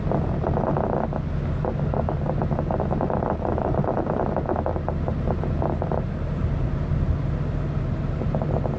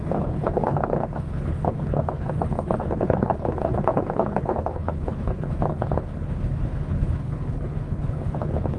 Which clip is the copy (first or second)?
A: second